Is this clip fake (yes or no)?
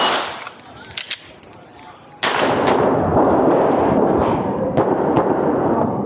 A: no